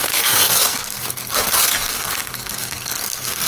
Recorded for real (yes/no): no